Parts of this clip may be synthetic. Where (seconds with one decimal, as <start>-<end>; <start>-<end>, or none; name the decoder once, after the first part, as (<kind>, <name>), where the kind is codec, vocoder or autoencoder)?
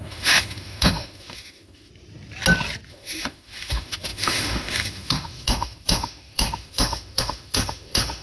0.0-1.9 (autoencoder, DAC-VAE); 2.9-8.2